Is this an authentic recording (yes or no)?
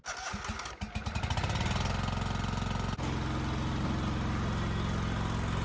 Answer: yes